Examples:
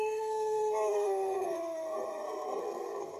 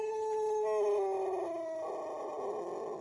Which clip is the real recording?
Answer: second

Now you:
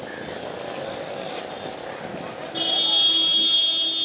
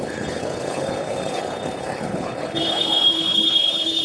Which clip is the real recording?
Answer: first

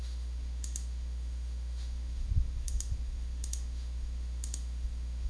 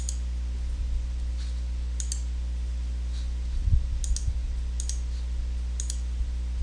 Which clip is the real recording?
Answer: second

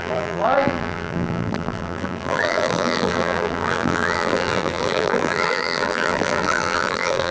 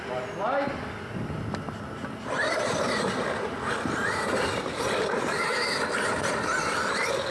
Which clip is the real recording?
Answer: second